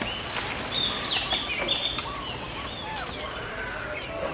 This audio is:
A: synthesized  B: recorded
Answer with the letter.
B